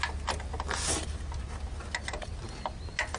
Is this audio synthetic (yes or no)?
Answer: no